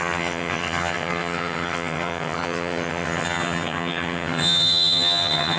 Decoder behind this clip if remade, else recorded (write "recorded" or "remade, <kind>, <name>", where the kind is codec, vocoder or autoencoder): remade, vocoder, HiFi-GAN